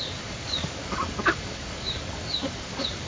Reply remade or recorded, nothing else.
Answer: remade